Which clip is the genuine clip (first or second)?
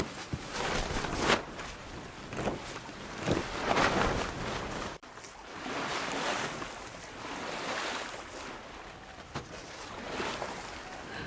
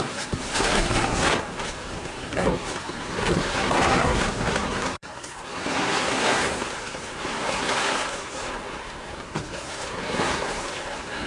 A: first